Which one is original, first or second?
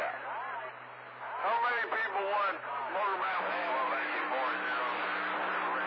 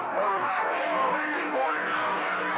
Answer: first